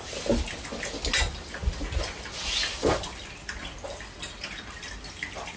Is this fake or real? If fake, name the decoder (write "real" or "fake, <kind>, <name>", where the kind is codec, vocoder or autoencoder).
real